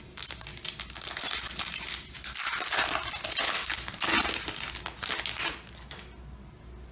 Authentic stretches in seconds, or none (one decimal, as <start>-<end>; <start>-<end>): 0.0-6.9